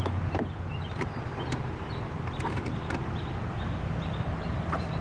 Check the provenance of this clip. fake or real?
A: real